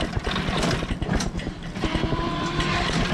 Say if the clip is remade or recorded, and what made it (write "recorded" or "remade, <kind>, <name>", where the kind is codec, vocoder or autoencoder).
recorded